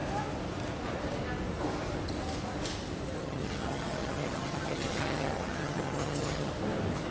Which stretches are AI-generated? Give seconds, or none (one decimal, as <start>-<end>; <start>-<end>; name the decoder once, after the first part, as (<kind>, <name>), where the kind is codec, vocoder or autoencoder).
3.2-6.5 (vocoder, HiFi-GAN)